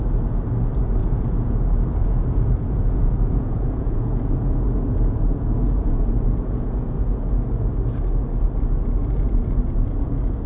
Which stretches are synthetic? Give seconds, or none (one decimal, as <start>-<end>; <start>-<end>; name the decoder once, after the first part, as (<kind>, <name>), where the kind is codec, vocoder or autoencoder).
1.0-1.6 (vocoder, Vocos); 2.0-7.3; 9.0-10.1